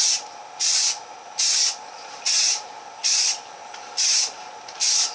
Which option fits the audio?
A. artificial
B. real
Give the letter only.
B